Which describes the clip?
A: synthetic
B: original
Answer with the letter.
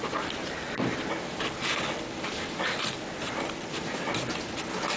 B